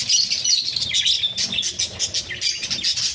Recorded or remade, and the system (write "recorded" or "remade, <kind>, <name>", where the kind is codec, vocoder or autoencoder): recorded